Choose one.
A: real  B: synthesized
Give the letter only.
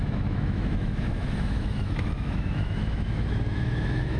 B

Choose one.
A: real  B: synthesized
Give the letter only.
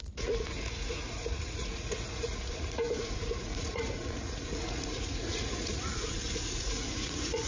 B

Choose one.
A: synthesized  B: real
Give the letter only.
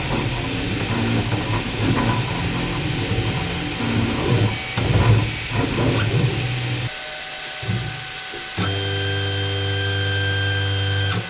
B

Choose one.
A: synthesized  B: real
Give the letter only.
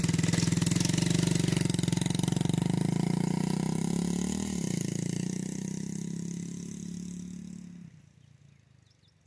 B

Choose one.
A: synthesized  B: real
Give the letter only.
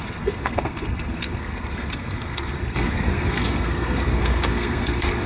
A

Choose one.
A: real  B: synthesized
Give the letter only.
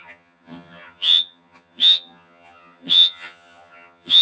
B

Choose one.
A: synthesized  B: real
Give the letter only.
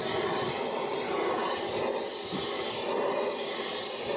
B